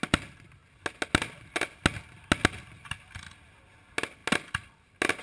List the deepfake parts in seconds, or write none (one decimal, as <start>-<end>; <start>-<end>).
none